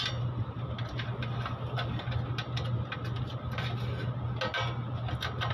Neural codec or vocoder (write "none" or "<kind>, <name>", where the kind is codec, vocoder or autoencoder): none